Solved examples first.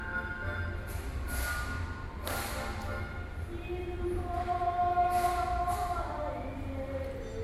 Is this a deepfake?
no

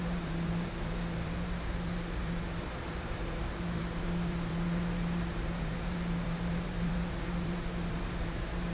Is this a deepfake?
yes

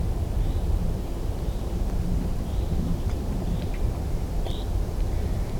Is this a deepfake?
yes